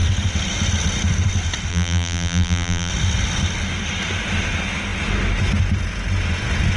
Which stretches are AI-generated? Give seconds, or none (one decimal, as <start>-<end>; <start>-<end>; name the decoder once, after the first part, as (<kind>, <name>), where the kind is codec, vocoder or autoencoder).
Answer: 1.7-2.9 (vocoder, BigVGAN v2)